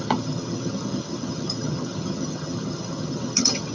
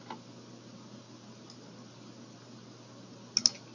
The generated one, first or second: first